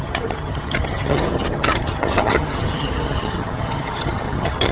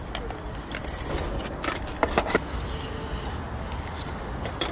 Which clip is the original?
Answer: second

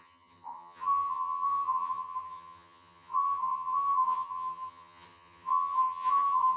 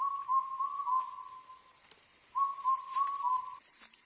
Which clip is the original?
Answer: second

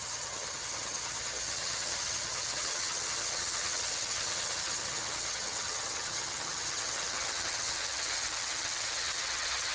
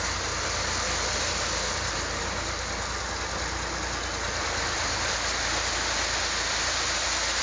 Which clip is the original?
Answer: second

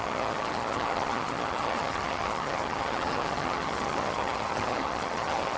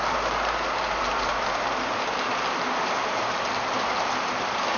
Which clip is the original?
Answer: second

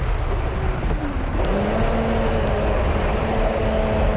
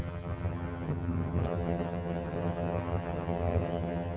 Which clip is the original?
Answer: first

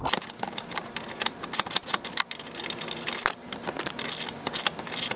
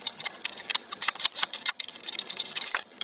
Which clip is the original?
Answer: first